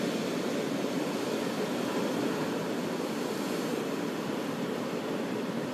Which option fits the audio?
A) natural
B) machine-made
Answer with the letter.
A